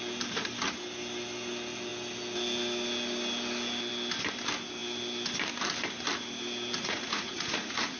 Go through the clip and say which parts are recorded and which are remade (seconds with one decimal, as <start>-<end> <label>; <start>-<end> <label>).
0.0-6.8 recorded; 6.8-8.0 remade